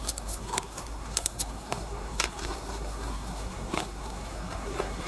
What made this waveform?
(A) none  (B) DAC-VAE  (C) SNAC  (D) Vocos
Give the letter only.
C